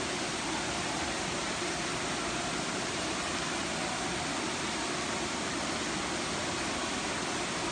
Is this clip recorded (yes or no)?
yes